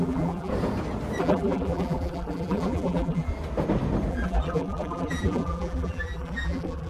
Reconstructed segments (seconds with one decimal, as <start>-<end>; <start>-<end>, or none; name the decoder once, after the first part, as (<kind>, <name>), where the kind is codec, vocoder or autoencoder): 0.0-0.5 (vocoder, BigVGAN v2); 1.2-3.3; 4.1-6.9